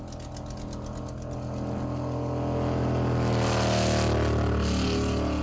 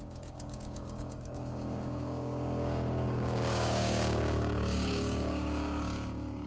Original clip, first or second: first